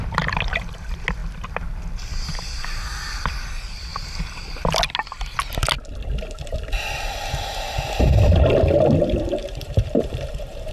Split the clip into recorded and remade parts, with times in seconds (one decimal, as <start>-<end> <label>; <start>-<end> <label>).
0.0-9.4 recorded; 9.4-10.7 remade